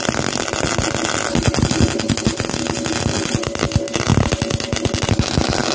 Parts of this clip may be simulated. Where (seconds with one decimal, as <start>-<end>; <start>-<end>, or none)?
none